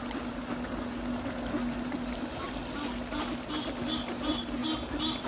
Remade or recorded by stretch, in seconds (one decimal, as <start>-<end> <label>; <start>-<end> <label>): 0.0-5.3 recorded